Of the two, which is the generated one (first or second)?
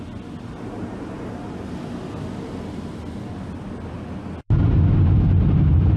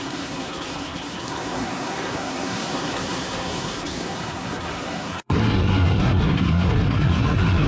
second